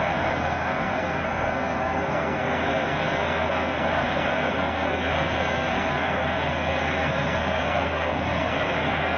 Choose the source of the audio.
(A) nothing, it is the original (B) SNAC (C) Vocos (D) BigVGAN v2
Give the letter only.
B